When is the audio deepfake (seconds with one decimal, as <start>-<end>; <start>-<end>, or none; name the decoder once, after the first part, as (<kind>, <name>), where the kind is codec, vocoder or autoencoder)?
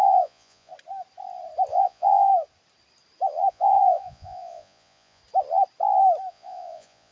0.0-0.7 (vocoder, Vocos); 1.7-2.3; 3.5-5.2; 6.3-7.1